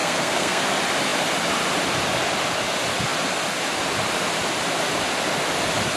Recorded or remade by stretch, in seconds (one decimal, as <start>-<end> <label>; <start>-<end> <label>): 0.0-0.6 remade; 0.6-6.0 recorded